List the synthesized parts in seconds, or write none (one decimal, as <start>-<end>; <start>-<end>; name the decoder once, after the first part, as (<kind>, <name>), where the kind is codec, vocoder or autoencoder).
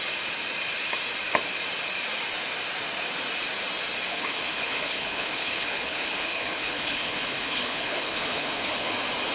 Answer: 4.1-8.9 (codec, HILCodec)